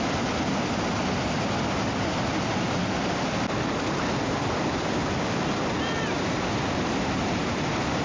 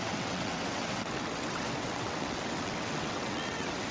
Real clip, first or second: first